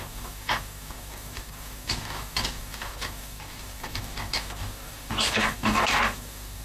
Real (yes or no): no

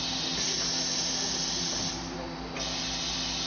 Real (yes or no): yes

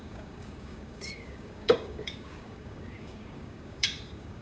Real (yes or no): no